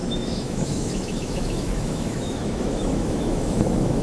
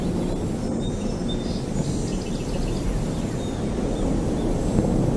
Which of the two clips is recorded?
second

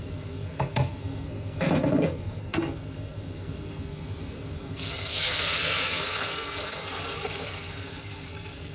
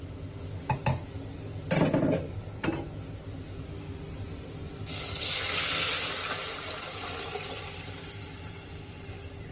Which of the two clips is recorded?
second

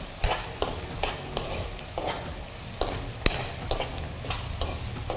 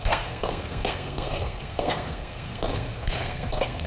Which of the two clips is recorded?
first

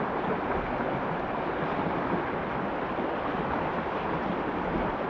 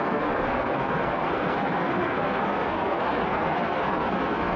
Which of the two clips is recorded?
first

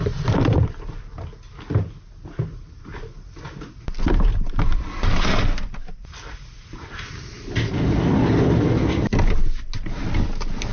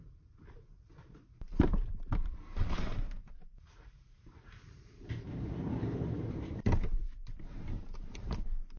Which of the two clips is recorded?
first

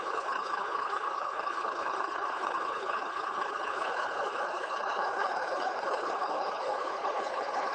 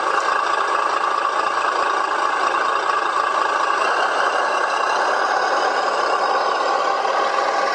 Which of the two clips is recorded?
second